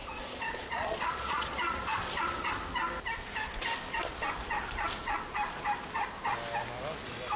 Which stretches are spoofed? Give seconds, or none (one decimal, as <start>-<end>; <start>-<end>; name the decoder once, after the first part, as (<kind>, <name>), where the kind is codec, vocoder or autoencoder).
0.0-2.5 (vocoder, Vocos)